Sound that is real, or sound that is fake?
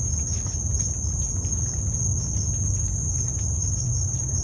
real